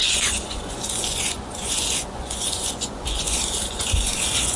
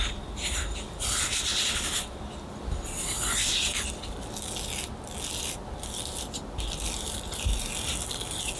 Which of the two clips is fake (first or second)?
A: first